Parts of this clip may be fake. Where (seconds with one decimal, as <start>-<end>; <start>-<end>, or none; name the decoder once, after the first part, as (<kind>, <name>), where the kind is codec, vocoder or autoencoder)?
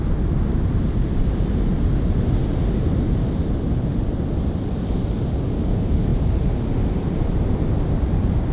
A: none